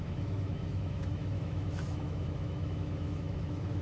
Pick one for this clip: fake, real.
fake